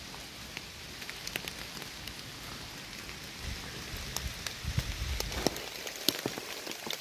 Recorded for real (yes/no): yes